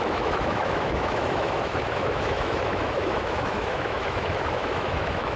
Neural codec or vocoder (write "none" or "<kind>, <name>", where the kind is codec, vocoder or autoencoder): autoencoder, DAC-VAE